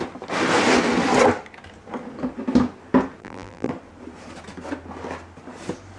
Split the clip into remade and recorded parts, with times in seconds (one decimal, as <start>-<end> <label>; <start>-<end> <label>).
0.0-3.2 recorded; 3.2-3.7 remade; 3.7-6.0 recorded